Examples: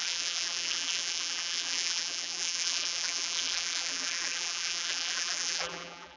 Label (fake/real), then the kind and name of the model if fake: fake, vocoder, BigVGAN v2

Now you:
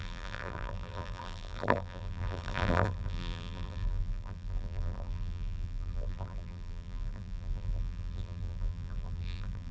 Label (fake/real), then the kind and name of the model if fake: fake, vocoder, BigVGAN v2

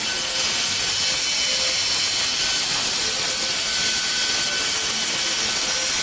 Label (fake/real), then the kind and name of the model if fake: real